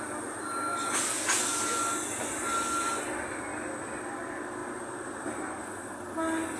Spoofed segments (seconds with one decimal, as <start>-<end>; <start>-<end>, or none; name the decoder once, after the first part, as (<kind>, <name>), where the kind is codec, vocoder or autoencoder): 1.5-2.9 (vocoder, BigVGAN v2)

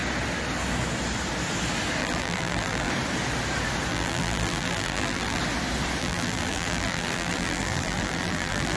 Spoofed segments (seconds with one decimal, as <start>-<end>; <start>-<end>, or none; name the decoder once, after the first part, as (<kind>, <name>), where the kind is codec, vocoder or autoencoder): 2.0-2.9 (vocoder, BigVGAN v2); 3.9-5.4; 6.0-8.8

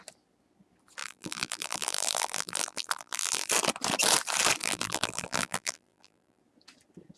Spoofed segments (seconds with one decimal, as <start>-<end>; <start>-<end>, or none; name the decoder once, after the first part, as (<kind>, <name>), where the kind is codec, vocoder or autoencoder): 1.0-3.5 (vocoder, BigVGAN v2); 4.6-6.4

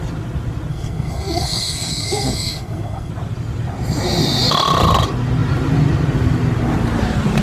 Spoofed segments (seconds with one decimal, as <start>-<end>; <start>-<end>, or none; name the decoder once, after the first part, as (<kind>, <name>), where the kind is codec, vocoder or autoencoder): 0.7-3.1 (codec, SNAC)

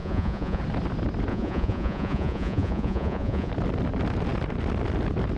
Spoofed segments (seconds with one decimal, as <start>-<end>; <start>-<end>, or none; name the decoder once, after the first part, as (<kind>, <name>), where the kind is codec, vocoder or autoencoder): 0.0-0.6 (vocoder, Vocos); 1.3-3.5

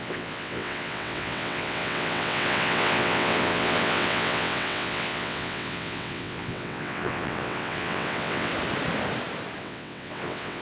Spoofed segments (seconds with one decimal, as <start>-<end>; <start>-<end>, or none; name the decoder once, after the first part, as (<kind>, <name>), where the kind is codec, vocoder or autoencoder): 0.0-8.5 (vocoder, WaveNeXt); 9.6-10.6